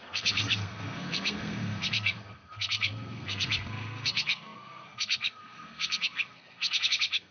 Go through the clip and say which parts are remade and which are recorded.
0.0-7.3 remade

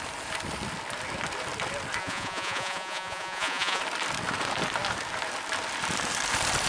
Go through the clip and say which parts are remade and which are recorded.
0.0-2.0 recorded; 2.0-3.8 remade; 3.8-6.7 recorded

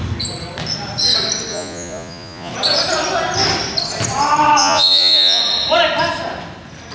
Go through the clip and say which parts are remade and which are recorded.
0.0-1.5 recorded; 1.5-2.5 remade; 2.5-4.6 recorded; 4.6-5.4 remade; 5.4-6.9 recorded

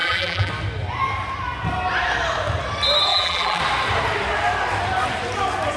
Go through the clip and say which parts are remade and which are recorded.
0.0-0.5 remade; 0.5-3.1 recorded; 3.1-3.6 remade; 3.6-5.8 recorded

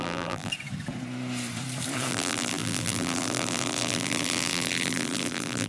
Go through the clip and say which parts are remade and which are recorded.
0.0-0.5 remade; 0.5-2.1 recorded; 2.1-5.7 remade